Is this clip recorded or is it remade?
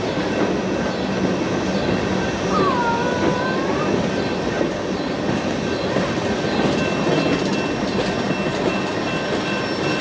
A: recorded